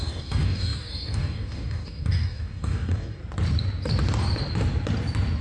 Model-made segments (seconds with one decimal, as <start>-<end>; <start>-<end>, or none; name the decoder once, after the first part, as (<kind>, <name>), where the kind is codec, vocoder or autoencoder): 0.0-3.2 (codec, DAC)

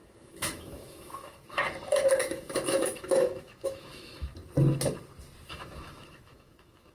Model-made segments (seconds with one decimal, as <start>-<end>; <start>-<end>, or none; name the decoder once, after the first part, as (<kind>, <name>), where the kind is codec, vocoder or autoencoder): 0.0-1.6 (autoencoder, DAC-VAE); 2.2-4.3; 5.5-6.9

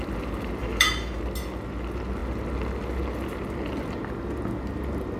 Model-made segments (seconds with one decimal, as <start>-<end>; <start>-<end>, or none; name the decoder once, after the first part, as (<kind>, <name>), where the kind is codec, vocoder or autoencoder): 0.6-1.2 (autoencoder, DAC-VAE)

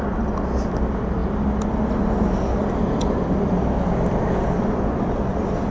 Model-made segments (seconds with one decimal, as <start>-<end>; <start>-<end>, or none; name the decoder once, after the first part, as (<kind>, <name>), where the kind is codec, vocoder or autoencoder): none

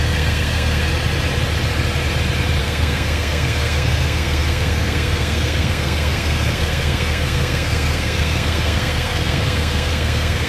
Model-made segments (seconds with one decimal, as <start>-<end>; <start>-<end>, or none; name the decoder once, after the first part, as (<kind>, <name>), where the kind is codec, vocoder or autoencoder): 0.0-0.9 (codec, SNAC); 2.6-10.5

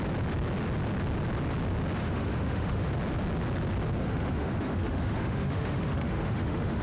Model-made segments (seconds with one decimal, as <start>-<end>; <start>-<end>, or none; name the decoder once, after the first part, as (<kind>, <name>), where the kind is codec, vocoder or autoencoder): 2.0-2.9 (autoencoder, DAC-VAE); 4.0-6.8

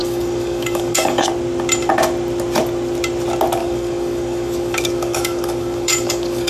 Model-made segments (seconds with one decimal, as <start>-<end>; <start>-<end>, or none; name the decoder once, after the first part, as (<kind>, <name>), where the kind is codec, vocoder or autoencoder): 0.0-1.3 (codec, DAC); 3.6-6.5

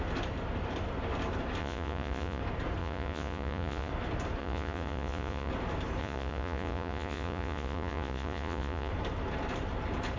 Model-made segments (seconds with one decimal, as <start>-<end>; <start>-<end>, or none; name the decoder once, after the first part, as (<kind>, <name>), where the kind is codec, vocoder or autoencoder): 1.6-2.4 (vocoder, Vocos); 2.8-3.9; 4.4-5.5; 6.0-8.9